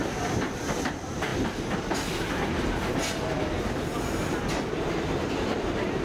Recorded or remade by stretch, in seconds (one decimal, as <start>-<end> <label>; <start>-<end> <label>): 0.0-6.0 recorded

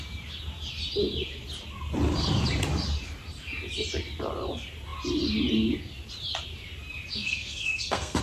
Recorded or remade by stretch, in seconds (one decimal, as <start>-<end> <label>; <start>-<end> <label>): 0.0-7.1 recorded; 7.1-8.2 remade

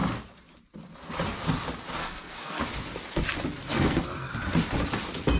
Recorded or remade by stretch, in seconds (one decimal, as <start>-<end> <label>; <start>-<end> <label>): 0.0-2.0 recorded; 2.0-2.6 remade; 2.6-3.7 recorded; 3.7-4.3 remade; 4.3-5.4 recorded

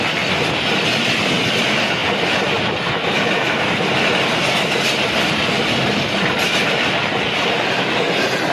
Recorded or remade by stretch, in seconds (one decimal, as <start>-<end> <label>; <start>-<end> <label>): 0.0-8.5 recorded

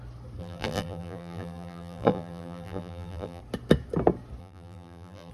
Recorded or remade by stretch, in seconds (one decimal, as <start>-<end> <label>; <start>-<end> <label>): 0.0-0.4 recorded; 0.4-3.4 remade; 3.4-4.4 recorded; 4.4-5.3 remade

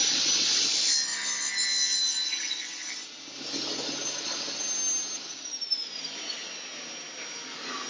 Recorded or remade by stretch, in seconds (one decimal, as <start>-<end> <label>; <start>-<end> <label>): 0.0-7.9 recorded

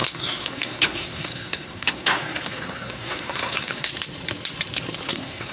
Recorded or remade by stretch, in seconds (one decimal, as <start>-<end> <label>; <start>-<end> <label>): 0.0-3.9 remade; 3.9-5.1 recorded; 5.1-5.5 remade